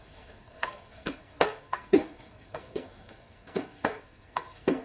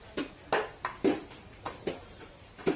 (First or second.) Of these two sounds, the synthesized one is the first